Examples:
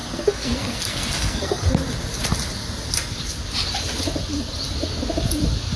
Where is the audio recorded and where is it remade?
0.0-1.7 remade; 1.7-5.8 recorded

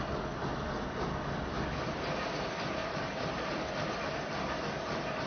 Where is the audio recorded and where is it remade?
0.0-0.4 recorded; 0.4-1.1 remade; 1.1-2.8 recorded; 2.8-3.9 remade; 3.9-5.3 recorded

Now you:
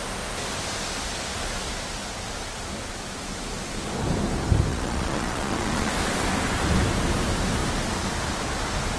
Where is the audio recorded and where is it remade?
0.0-4.7 recorded; 4.7-5.9 remade; 5.9-9.0 recorded

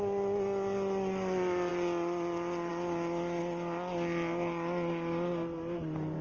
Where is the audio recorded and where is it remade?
0.0-6.2 recorded